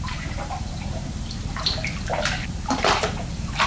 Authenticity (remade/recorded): remade